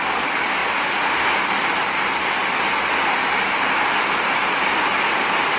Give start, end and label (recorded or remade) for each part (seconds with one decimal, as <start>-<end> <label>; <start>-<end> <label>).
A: 0.0-0.6 recorded; 0.6-3.8 remade; 3.8-5.6 recorded

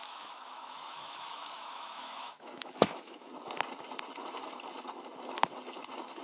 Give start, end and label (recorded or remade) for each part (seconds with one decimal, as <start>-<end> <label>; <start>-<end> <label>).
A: 0.0-3.3 remade; 3.3-6.2 recorded

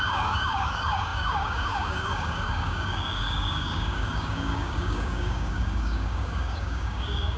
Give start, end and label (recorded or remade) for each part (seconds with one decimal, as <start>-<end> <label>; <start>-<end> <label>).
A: 0.0-7.4 remade

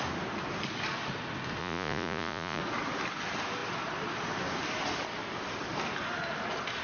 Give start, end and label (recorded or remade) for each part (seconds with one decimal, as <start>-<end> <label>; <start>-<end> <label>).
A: 0.0-1.6 recorded; 1.6-2.6 remade; 2.6-6.8 recorded

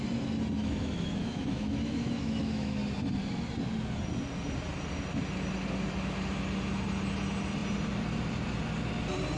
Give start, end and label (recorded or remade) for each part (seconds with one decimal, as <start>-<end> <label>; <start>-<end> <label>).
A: 0.0-0.6 recorded; 0.6-2.8 remade; 2.8-9.4 recorded

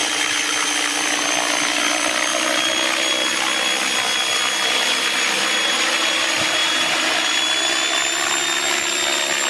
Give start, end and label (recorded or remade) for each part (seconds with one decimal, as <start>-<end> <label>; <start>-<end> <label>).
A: 0.0-0.7 remade; 0.7-6.6 recorded; 6.6-7.3 remade; 7.3-9.5 recorded

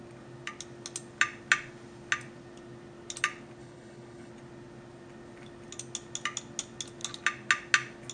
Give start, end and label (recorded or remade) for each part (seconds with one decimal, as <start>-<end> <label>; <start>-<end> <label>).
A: 0.0-3.6 recorded; 3.6-4.3 remade; 4.3-8.1 recorded